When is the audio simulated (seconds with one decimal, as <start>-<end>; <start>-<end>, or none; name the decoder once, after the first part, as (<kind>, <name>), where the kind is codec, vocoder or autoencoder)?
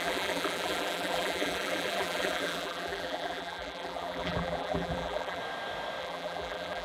0.0-5.4 (vocoder, BigVGAN v2); 6.0-6.8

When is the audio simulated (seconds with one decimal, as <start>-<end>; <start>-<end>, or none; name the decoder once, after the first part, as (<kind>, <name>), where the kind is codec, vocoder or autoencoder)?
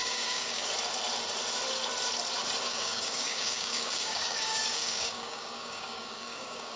0.0-0.7 (codec, DAC); 2.7-6.8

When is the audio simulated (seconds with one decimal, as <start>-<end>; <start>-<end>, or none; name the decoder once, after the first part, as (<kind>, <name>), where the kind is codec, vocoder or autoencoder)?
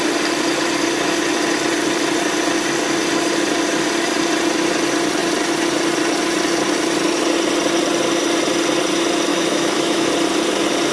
9.3-10.1 (autoencoder, DAC-VAE)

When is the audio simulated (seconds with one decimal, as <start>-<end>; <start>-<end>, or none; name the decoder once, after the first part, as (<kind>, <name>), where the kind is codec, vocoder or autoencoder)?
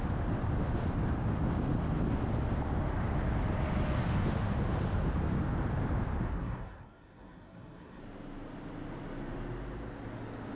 6.3-8.0 (codec, SNAC)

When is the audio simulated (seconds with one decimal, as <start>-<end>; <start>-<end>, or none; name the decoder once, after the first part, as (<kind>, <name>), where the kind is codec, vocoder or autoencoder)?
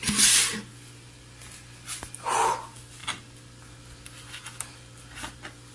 none